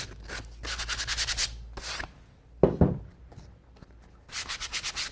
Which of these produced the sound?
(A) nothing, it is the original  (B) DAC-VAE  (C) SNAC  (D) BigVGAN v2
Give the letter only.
A